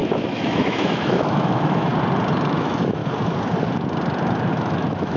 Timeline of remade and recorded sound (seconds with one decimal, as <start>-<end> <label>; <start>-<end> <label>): 0.0-1.9 remade; 1.9-2.5 recorded; 2.5-3.0 remade; 3.0-4.5 recorded; 4.5-5.2 remade